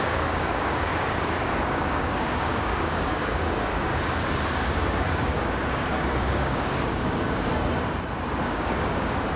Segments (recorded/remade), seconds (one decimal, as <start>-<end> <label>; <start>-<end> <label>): 0.0-7.5 remade; 7.5-8.4 recorded; 8.4-9.4 remade